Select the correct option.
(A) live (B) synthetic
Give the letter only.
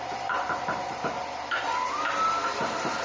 A